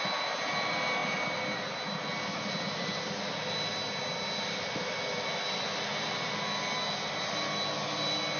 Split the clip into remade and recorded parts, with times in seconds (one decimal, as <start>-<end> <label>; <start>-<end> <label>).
0.0-8.4 recorded